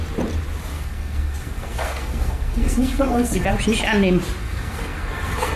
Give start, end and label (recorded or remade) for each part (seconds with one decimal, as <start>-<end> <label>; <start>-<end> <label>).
0.0-0.7 recorded; 0.7-3.5 remade; 3.5-4.4 recorded; 4.4-5.6 remade

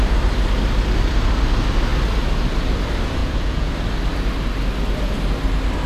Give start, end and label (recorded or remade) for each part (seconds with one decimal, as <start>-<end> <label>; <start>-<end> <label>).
0.0-3.2 recorded; 3.2-3.7 remade; 3.7-5.9 recorded

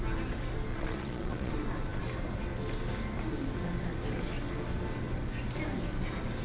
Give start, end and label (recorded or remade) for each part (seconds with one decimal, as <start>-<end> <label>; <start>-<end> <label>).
0.0-0.7 recorded; 0.7-1.5 remade; 1.5-6.4 recorded